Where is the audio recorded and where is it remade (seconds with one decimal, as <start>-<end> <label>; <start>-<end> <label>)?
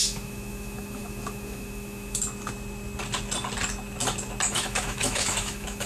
0.0-2.2 remade; 2.2-4.5 recorded; 4.5-5.9 remade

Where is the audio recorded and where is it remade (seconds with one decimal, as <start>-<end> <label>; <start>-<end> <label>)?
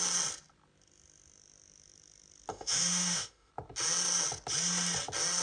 0.0-2.5 recorded; 2.5-3.5 remade; 3.5-5.4 recorded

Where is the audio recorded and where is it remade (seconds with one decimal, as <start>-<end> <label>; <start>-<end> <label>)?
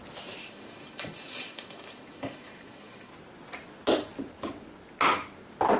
0.0-0.4 recorded; 0.4-3.1 remade; 3.1-5.8 recorded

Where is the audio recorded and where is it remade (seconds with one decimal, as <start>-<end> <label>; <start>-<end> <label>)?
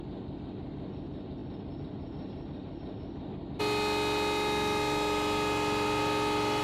0.0-6.6 recorded